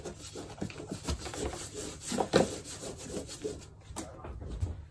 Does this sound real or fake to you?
real